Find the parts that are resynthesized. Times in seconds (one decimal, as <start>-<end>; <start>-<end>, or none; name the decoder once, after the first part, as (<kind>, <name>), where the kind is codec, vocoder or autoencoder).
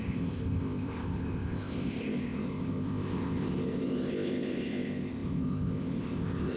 0.0-6.6 (codec, ZipCodec)